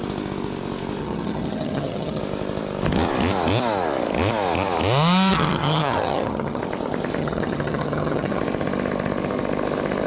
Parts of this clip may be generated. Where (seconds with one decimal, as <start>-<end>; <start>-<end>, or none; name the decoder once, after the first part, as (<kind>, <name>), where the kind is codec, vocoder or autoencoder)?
1.0-2.2 (vocoder, HiFi-GAN); 5.3-6.6; 7.2-8.4